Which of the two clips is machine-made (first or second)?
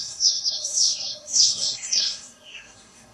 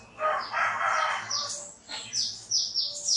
first